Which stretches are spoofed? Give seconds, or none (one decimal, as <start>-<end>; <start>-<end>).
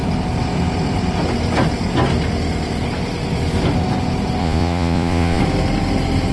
4.4-5.4